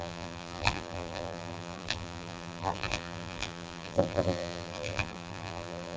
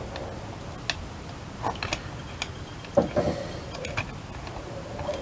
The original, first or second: second